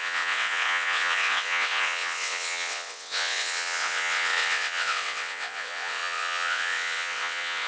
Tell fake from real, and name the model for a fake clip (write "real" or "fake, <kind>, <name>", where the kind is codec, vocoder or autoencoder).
fake, vocoder, WaveNeXt